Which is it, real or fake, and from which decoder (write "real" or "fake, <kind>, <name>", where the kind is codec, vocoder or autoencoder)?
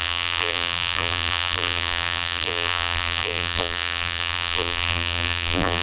fake, vocoder, BigVGAN v2